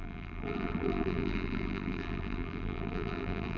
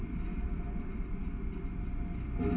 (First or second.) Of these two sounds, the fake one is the first